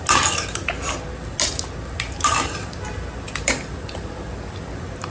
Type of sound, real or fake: real